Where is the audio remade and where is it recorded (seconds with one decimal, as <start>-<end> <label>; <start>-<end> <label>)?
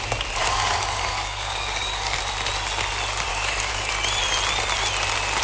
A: 0.0-0.4 recorded; 0.4-2.2 remade; 2.2-3.3 recorded; 3.3-3.9 remade; 3.9-5.4 recorded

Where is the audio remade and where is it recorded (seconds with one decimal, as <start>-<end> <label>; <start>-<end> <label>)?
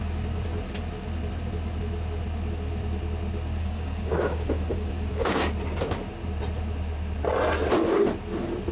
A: 0.0-3.6 recorded; 3.6-5.5 remade; 5.5-8.7 recorded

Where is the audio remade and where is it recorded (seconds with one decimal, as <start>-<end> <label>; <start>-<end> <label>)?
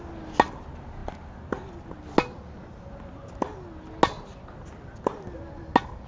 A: 0.0-6.1 recorded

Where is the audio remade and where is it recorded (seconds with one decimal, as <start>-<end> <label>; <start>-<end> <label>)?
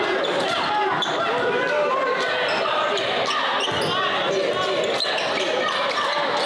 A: 0.0-6.5 recorded